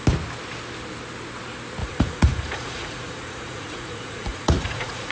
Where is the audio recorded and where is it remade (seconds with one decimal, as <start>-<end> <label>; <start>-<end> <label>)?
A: 0.0-1.8 recorded; 1.8-5.1 remade